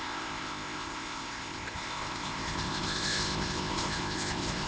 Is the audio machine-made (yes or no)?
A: yes